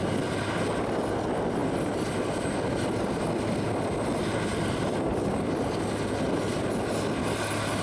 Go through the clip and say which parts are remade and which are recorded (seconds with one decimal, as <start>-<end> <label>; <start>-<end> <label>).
0.0-7.8 recorded